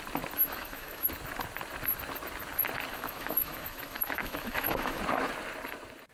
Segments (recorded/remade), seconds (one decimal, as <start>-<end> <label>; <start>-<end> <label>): 0.0-0.4 recorded; 0.4-1.1 remade; 1.1-2.9 recorded; 2.9-5.0 remade; 5.0-6.1 recorded

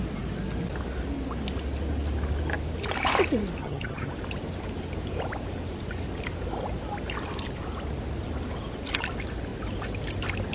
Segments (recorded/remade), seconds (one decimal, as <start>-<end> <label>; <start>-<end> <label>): 0.0-3.6 recorded; 3.6-4.1 remade; 4.1-10.5 recorded